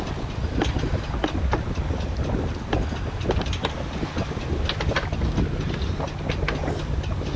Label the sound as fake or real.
real